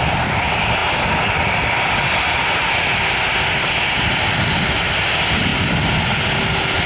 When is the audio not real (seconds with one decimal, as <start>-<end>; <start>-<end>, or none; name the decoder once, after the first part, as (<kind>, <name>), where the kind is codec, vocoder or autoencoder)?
none